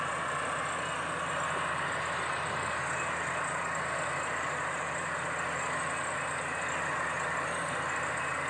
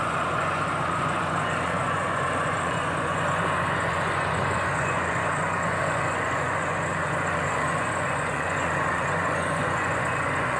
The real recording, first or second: first